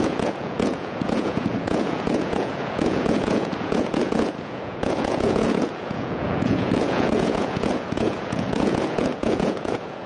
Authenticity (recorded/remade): remade